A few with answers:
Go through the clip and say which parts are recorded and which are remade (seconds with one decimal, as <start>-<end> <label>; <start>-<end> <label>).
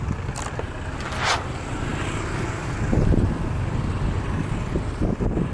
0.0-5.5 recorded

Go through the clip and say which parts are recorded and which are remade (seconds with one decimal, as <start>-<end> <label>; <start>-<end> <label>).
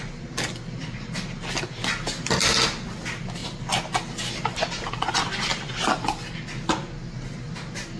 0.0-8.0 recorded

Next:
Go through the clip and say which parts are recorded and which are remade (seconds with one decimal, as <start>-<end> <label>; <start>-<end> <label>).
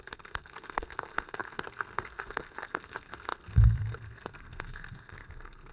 0.0-5.7 remade